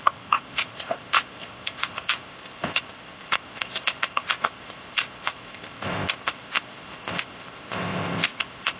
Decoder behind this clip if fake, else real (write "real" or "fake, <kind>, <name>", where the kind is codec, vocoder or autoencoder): fake, codec, ZipCodec